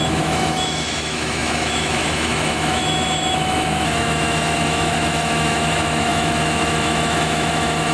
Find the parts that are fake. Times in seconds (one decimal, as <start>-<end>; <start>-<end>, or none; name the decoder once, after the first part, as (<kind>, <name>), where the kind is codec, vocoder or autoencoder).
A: 0.0-7.9 (autoencoder, DAC-VAE)